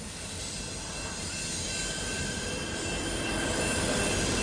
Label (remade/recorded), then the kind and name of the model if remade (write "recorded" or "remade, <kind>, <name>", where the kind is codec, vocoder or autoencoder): recorded